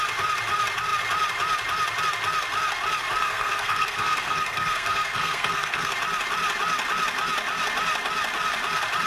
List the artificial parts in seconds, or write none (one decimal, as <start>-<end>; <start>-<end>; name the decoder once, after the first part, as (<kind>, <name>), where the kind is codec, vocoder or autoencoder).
3.2-5.9 (codec, SNAC)